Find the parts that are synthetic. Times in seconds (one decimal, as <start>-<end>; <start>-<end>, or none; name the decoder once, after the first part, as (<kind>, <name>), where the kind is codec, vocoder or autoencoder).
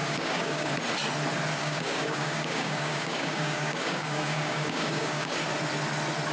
0.0-0.7 (codec, DAC); 1.6-5.4